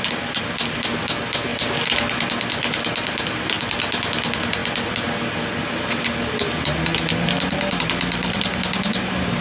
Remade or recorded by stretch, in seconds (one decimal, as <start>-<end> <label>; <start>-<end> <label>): 0.0-9.4 recorded